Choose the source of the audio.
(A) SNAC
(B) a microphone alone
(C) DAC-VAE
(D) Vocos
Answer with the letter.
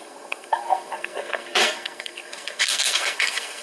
A